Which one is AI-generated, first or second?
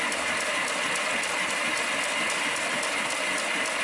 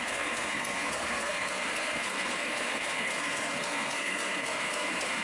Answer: second